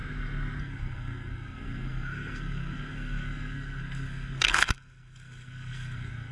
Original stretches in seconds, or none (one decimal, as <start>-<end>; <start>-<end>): 0.0-0.6

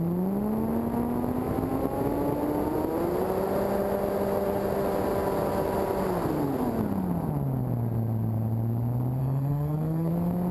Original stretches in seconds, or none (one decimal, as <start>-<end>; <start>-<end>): 0.0-9.2; 10.1-10.5